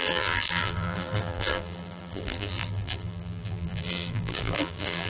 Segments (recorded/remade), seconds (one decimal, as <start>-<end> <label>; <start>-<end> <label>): 0.0-5.1 remade